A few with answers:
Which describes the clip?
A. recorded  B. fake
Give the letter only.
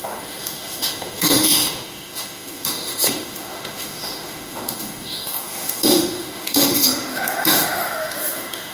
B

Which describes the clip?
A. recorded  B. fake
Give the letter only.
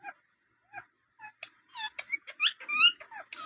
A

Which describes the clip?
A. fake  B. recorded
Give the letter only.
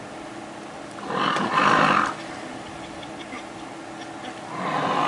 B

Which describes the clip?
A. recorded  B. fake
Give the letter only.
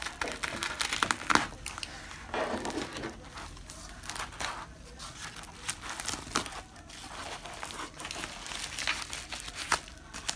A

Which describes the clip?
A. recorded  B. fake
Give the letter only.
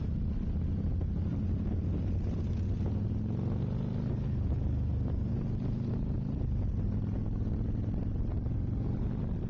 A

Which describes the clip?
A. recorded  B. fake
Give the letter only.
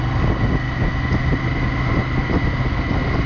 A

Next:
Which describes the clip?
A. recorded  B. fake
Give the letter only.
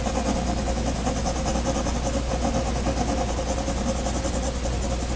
A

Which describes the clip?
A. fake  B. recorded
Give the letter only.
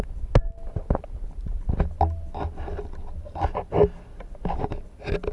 B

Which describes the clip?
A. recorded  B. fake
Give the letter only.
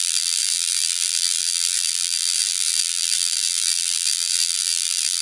B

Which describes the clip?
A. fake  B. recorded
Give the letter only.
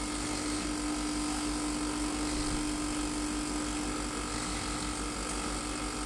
B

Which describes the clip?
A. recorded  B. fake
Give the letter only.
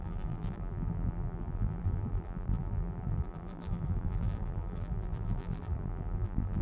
B